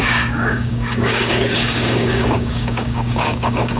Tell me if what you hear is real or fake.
fake